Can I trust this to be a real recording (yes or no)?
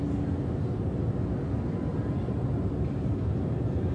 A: yes